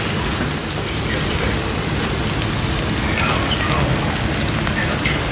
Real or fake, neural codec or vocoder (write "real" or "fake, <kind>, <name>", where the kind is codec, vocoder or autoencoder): real